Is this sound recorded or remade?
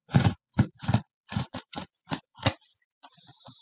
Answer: remade